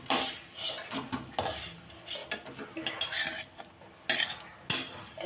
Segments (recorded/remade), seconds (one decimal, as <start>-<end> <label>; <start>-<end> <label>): 0.0-5.3 recorded